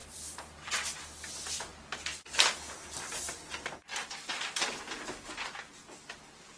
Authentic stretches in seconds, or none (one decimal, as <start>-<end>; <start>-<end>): 1.0-3.9; 4.7-6.6